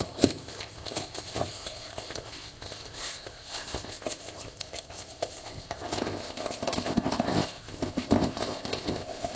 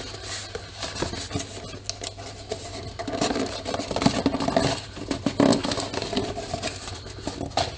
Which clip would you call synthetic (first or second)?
first